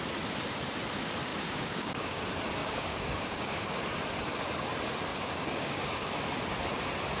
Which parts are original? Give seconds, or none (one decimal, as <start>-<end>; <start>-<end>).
0.0-1.3; 2.2-2.6; 3.8-5.1; 6.1-7.2